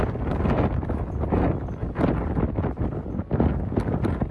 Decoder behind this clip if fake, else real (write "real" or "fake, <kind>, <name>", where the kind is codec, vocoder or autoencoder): real